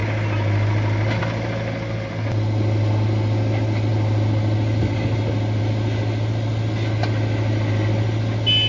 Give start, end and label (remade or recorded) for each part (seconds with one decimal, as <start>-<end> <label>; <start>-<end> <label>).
0.0-8.7 recorded